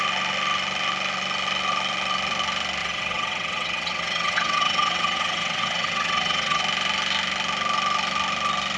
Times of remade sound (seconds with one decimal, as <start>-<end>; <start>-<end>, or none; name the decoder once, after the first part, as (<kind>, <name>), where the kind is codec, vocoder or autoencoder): 2.8-6.6 (vocoder, WaveNeXt)